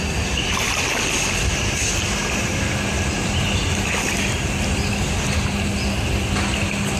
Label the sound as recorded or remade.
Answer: recorded